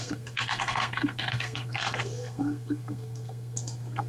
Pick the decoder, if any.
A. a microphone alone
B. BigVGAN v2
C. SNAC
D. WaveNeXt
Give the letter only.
C